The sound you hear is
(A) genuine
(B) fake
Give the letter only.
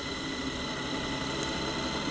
A